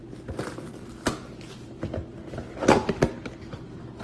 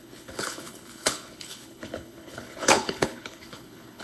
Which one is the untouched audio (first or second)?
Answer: first